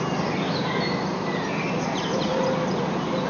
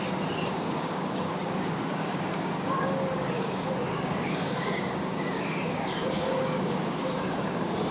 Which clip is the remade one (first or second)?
second